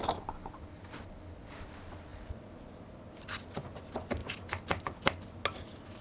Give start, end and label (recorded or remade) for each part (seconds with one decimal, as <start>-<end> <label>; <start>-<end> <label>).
0.0-6.0 recorded